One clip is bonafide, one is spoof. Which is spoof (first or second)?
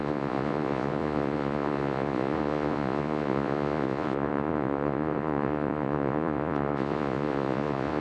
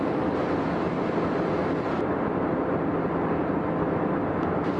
first